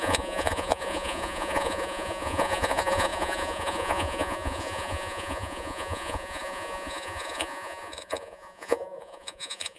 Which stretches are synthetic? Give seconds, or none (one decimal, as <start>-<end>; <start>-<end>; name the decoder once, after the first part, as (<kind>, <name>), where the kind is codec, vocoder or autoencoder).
0.0-9.8 (vocoder, Vocos)